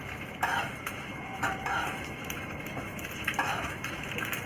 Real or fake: fake